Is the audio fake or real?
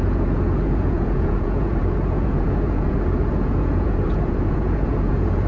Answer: fake